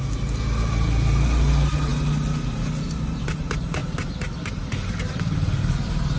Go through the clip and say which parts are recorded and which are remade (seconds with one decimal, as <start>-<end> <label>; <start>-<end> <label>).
0.0-3.8 recorded; 3.8-6.2 remade